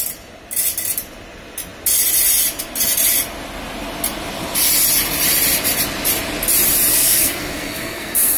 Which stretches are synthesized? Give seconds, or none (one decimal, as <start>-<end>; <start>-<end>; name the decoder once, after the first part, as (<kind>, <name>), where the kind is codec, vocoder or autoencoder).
6.9-8.4 (codec, SNAC)